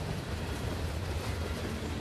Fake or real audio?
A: real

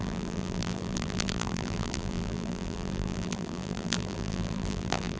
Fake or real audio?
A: fake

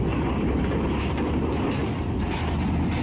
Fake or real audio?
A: real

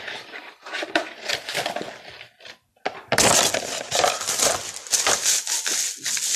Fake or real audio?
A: real